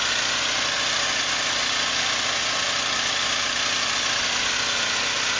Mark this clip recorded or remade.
recorded